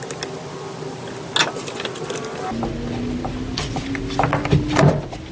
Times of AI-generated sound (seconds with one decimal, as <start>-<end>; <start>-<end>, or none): none